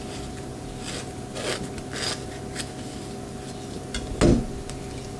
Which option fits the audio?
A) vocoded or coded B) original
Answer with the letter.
B